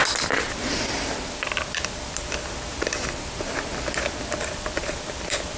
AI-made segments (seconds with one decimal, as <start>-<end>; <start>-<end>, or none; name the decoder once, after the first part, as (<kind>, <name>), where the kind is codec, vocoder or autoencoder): 0.7-2.2 (vocoder, BigVGAN v2); 3.5-5.6